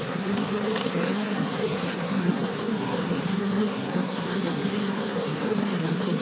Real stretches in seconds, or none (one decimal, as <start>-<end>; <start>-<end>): none